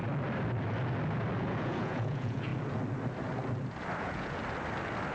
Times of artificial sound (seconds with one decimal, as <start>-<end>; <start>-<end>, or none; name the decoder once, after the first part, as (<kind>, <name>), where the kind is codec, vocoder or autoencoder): 1.4-2.5 (vocoder, Vocos); 4.0-4.4